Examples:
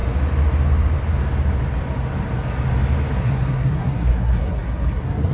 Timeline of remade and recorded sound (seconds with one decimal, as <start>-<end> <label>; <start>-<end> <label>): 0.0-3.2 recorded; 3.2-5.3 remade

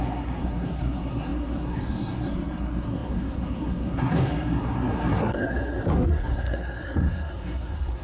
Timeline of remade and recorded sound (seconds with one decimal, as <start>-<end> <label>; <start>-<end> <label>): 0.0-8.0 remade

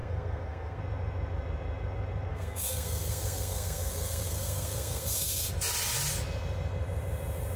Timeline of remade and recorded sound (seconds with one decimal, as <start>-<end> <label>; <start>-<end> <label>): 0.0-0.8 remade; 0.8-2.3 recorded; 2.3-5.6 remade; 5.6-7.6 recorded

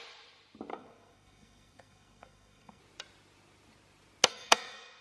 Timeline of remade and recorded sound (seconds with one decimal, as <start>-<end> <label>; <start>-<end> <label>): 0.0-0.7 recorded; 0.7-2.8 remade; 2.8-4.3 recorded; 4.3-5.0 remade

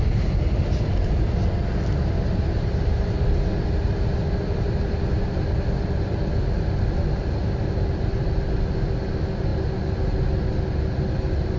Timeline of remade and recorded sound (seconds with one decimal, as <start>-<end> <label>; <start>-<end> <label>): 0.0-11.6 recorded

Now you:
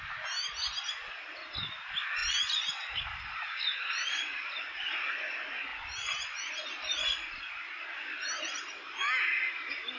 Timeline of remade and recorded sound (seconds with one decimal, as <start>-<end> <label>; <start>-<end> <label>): 0.0-10.0 recorded

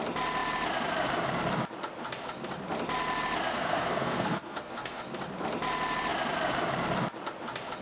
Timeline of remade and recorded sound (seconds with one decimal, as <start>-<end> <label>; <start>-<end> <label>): 0.0-3.5 recorded; 3.5-5.0 remade; 5.0-7.8 recorded